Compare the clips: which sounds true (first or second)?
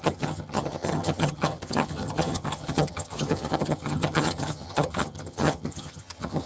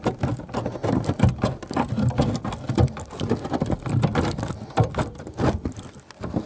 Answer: second